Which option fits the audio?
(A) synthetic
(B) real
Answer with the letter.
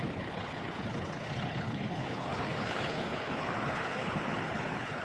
A